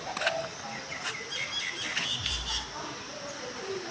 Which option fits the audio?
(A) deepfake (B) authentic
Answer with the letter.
B